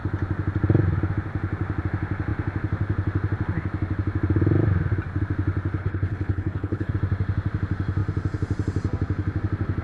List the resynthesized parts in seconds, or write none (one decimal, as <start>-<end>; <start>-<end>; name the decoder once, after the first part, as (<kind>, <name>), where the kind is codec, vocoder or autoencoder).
5.8-6.9 (codec, HILCodec)